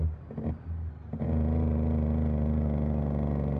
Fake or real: real